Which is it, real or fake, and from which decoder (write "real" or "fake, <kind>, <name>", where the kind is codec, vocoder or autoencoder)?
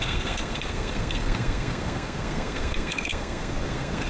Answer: fake, codec, SNAC